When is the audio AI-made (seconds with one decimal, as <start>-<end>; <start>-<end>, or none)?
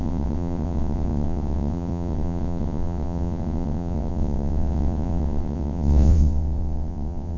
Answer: 0.0-7.4